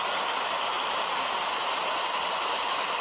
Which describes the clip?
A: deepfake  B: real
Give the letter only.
B